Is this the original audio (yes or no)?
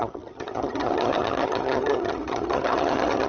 no